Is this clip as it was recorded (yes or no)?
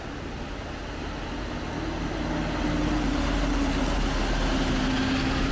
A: yes